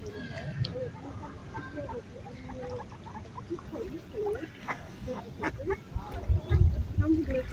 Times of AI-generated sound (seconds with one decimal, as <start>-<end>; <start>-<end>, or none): 4.6-5.2